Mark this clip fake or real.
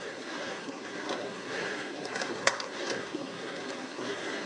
fake